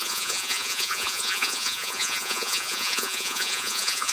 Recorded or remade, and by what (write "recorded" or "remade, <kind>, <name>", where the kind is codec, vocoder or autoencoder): remade, vocoder, Vocos